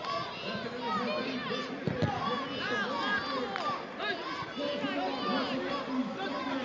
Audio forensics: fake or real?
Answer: real